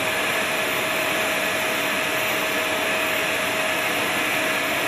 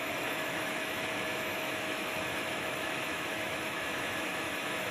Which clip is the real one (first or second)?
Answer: first